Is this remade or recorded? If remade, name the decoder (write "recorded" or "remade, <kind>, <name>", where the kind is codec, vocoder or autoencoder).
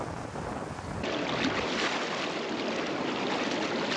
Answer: recorded